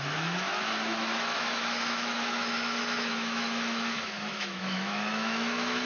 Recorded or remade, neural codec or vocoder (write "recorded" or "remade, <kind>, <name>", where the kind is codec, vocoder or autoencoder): remade, autoencoder, DAC-VAE